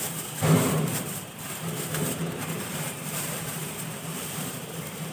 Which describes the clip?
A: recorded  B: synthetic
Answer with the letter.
B